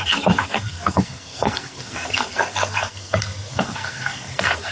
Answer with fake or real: fake